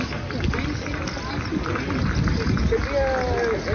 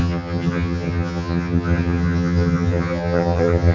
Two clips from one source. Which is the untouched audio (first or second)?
first